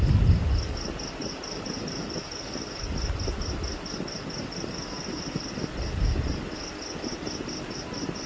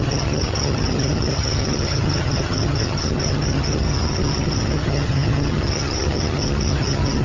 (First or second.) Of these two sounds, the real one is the first